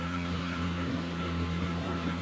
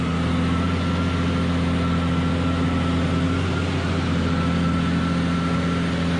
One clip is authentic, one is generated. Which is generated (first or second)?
first